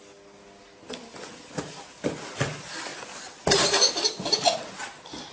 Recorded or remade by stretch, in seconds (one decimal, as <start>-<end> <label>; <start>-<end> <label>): 0.0-5.3 recorded